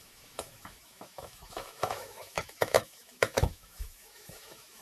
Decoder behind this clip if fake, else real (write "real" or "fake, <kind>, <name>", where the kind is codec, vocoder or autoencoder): fake, autoencoder, DAC-VAE